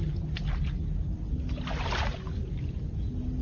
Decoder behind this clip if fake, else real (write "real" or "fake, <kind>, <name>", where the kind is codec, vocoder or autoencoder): real